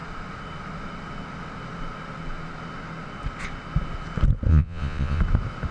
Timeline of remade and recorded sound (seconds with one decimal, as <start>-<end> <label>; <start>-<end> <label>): 0.0-4.5 recorded; 4.5-5.2 remade; 5.2-5.7 recorded

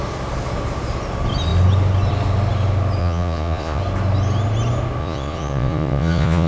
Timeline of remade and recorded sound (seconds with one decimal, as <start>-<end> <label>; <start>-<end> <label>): 0.0-3.0 recorded; 3.0-3.8 remade; 3.8-5.0 recorded; 5.0-6.5 remade

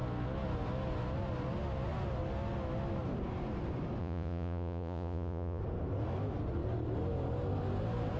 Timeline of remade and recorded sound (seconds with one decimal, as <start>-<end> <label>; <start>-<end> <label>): 0.0-4.0 recorded; 4.0-5.6 remade; 5.6-8.2 recorded

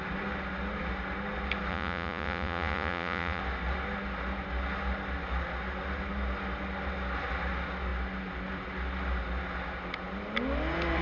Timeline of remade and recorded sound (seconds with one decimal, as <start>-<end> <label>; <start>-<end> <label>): 0.0-1.7 recorded; 1.7-3.4 remade; 3.4-11.0 recorded

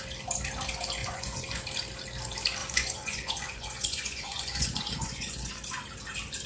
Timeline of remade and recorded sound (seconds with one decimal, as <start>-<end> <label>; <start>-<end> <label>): 0.0-1.0 recorded; 1.0-1.6 remade; 1.6-2.6 recorded; 2.6-5.5 remade; 5.5-6.5 recorded

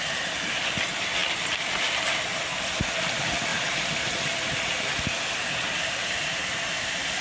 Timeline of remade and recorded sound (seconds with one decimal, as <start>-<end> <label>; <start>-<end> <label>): 0.0-7.2 recorded

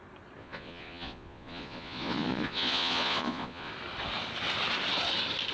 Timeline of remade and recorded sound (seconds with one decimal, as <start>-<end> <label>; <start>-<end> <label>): 0.0-0.4 recorded; 0.4-3.7 remade; 3.7-5.5 recorded